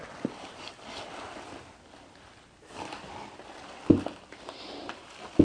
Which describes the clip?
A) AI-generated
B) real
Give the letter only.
B